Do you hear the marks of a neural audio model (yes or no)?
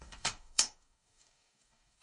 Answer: yes